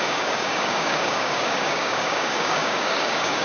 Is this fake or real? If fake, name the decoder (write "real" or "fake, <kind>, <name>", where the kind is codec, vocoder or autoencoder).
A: fake, codec, DAC